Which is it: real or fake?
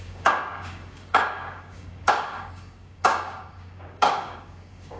fake